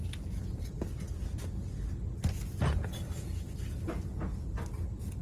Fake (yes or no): no